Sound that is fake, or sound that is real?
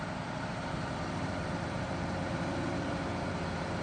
fake